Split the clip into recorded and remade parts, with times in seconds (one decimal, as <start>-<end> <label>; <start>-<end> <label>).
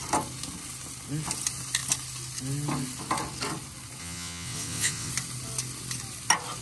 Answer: 0.0-4.0 recorded; 4.0-5.1 remade; 5.1-6.6 recorded